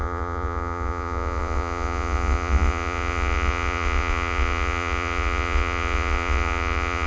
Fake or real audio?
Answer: fake